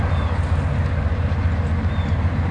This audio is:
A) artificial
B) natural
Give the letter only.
B